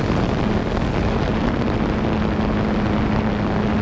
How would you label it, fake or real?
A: real